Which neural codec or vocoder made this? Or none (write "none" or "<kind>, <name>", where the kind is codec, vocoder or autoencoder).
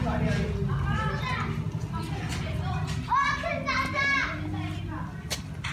none